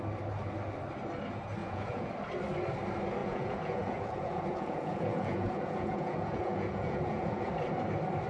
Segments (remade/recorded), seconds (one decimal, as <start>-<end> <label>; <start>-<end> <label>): 0.0-1.6 recorded; 1.6-2.1 remade; 2.1-3.2 recorded; 3.2-7.5 remade; 7.5-8.3 recorded

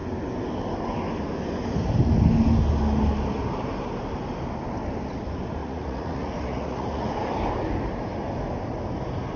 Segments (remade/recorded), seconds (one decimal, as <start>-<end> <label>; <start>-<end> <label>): 0.0-5.6 recorded; 5.6-7.1 remade; 7.1-9.4 recorded

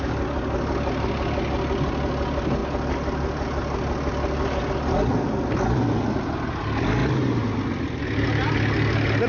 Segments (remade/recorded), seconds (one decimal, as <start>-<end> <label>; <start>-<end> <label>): 0.0-9.3 recorded

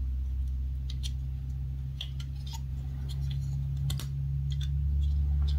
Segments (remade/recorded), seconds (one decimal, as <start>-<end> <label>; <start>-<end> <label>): 0.0-5.6 recorded